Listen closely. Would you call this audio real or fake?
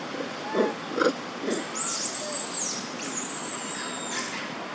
real